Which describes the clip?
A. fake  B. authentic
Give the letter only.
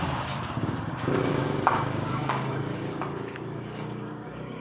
A